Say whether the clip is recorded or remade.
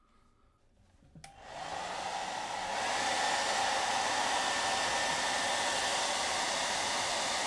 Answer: recorded